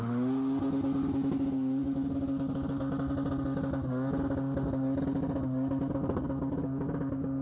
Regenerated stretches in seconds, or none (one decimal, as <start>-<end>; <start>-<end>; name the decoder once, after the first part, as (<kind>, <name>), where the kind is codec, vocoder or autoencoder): none